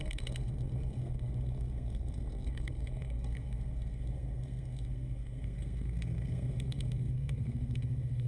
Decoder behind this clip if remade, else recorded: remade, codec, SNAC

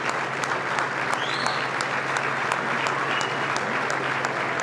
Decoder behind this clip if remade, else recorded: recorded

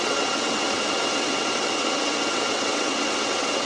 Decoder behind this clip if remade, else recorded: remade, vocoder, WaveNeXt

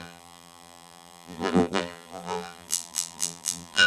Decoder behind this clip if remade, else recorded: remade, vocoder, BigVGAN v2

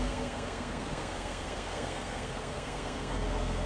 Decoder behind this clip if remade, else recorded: remade, codec, SNAC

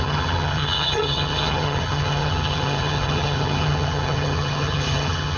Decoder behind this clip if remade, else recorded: remade, vocoder, HiFi-GAN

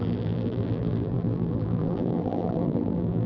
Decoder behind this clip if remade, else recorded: remade, vocoder, BigVGAN v2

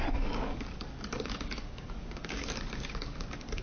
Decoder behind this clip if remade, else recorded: remade, codec, DAC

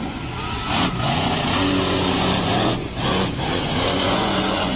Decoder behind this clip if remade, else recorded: remade, vocoder, Vocos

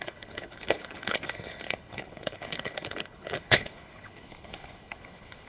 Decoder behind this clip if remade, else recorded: remade, codec, HILCodec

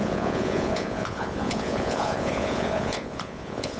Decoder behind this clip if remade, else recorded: remade, vocoder, Vocos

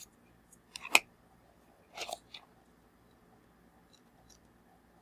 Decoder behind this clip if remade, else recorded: recorded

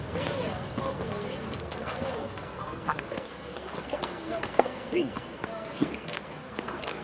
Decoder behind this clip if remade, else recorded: remade, codec, SNAC